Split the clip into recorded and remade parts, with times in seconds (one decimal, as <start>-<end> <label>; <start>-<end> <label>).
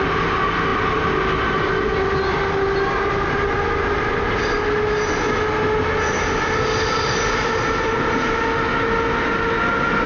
0.0-10.1 recorded